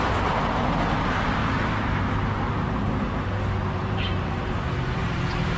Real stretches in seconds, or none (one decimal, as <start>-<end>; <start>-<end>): none